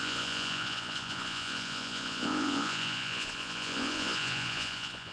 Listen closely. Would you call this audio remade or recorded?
remade